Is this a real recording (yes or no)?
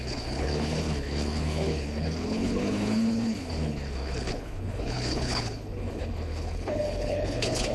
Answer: no